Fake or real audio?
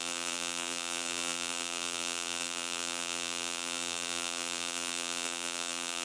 fake